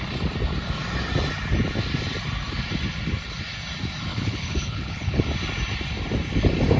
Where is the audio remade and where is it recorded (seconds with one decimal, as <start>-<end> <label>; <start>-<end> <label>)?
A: 0.0-4.1 recorded; 4.1-5.2 remade; 5.2-6.8 recorded